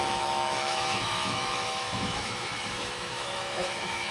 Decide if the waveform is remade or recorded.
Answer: remade